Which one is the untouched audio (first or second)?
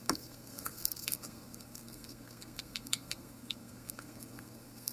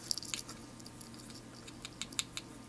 second